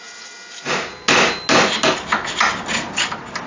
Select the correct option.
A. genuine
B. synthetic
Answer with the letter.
A